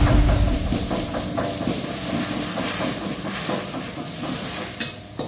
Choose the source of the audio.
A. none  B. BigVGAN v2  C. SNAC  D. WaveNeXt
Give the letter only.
A